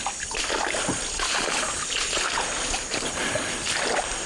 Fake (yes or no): no